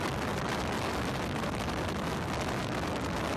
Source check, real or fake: real